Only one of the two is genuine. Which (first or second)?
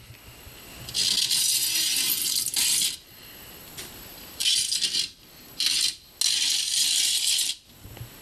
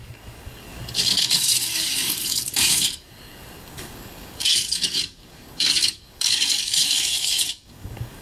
first